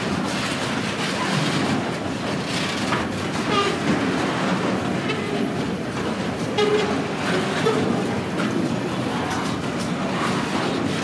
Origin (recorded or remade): recorded